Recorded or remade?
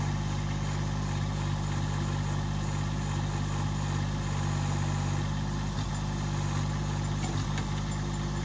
recorded